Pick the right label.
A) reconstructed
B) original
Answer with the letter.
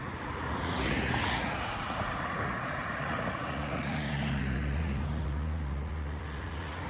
A